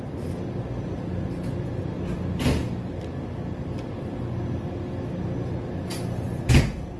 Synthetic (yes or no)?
no